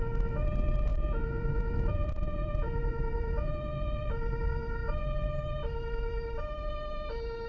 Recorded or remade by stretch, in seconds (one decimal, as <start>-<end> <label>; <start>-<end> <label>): 0.0-0.9 recorded; 0.9-3.5 remade; 3.5-7.5 recorded